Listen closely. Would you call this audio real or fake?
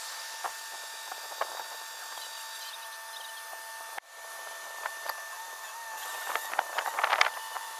real